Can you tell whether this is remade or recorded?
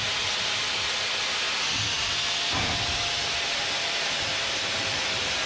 recorded